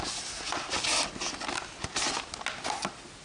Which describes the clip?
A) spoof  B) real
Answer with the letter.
B